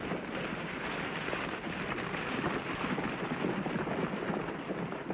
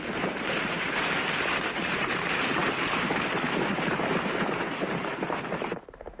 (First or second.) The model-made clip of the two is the second